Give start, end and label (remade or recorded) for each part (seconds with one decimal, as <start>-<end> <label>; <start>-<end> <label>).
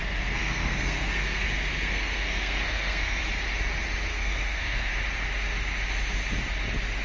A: 0.0-3.2 remade; 3.2-4.1 recorded; 4.1-4.9 remade; 4.9-7.0 recorded